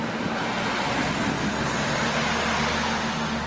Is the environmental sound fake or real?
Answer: real